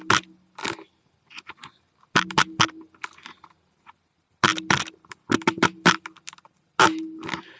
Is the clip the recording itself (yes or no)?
yes